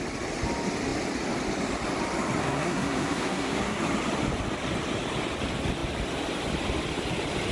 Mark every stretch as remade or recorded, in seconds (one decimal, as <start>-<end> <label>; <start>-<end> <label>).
0.0-2.4 recorded; 2.4-3.8 remade; 3.8-7.5 recorded